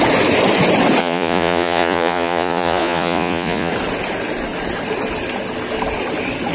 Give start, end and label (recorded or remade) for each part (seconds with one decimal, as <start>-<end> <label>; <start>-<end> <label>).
0.0-1.0 recorded; 1.0-3.7 remade; 3.7-6.5 recorded